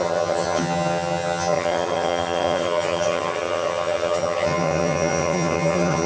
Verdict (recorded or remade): remade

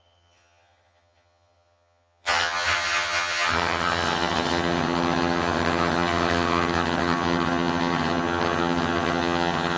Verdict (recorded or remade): remade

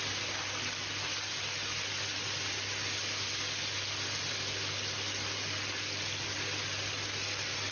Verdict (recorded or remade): recorded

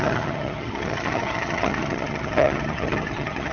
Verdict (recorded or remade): remade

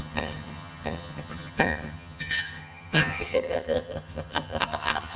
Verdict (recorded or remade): remade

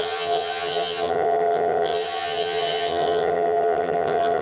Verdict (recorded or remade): remade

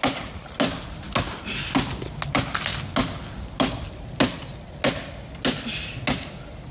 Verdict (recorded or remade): recorded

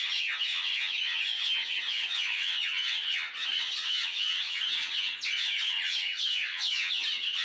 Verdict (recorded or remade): remade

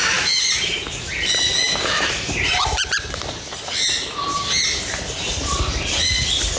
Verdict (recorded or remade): recorded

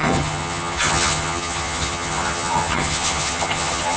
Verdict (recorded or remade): remade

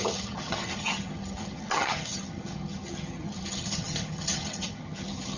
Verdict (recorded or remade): remade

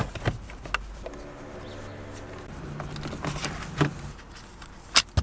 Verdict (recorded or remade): recorded